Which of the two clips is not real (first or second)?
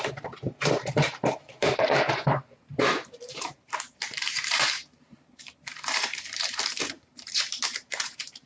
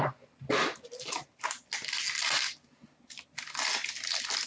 first